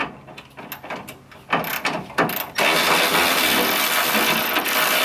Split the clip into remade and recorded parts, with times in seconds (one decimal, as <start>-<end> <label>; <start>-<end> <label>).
0.0-5.0 recorded